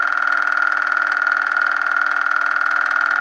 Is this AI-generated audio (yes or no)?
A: no